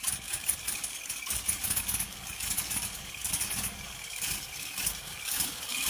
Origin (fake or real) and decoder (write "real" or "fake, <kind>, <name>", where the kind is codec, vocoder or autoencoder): fake, codec, DAC